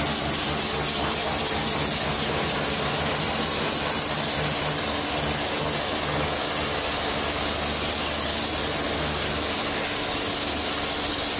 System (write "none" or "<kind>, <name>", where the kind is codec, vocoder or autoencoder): none